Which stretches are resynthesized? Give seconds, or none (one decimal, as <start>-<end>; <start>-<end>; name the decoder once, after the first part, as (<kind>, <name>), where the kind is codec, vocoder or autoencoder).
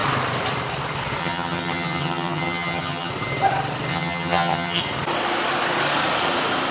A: 1.2-3.1 (vocoder, HiFi-GAN); 3.9-4.8